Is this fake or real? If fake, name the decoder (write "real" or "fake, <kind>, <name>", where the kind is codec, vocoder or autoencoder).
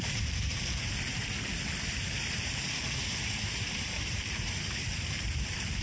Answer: fake, vocoder, BigVGAN v2